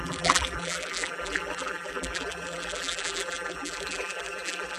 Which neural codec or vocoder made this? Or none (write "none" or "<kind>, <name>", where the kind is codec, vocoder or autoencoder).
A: vocoder, BigVGAN v2